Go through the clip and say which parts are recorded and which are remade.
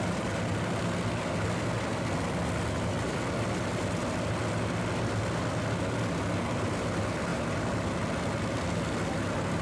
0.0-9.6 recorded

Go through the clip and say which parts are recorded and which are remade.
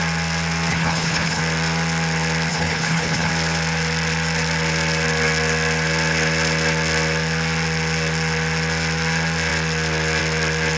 0.0-0.7 recorded; 0.7-1.4 remade; 1.4-2.5 recorded; 2.5-3.3 remade; 3.3-10.8 recorded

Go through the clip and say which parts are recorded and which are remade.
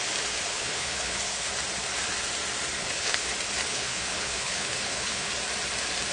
0.0-0.5 recorded; 0.5-1.5 remade; 1.5-2.8 recorded; 2.8-3.3 remade; 3.3-3.7 recorded; 3.7-5.3 remade; 5.3-6.1 recorded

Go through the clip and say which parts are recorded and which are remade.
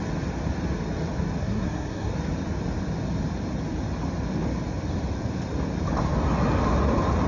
0.0-1.4 recorded; 1.4-2.1 remade; 2.1-7.3 recorded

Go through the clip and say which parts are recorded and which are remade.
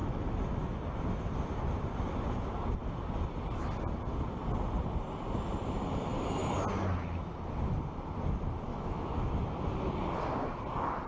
0.0-0.8 remade; 0.8-8.7 recorded; 8.7-9.3 remade; 9.3-11.1 recorded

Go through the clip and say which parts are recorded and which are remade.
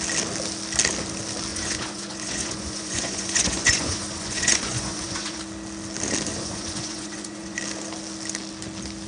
0.0-1.5 recorded; 1.5-5.4 remade; 5.4-6.3 recorded; 6.3-7.6 remade; 7.6-9.1 recorded